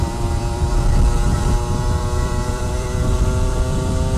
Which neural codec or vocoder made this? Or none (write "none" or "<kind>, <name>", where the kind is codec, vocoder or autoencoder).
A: vocoder, BigVGAN v2